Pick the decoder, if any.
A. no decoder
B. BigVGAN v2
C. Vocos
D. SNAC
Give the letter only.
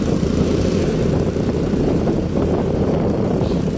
B